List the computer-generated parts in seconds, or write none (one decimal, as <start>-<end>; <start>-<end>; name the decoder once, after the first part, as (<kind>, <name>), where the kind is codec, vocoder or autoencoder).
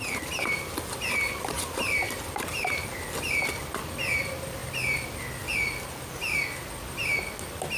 none